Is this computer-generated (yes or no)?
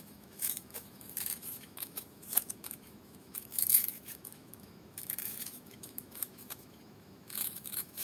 yes